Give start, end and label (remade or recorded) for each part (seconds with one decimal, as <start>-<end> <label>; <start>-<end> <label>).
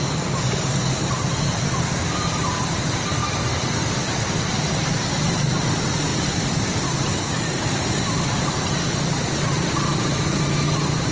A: 0.0-3.2 remade; 3.2-3.8 recorded; 3.8-11.1 remade